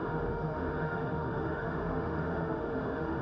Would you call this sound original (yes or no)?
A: no